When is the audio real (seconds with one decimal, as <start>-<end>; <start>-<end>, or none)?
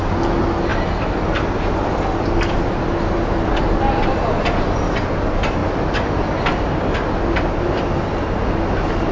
0.0-9.1